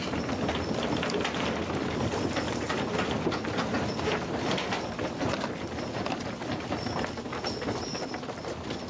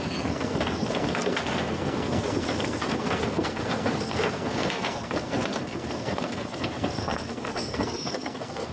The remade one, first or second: second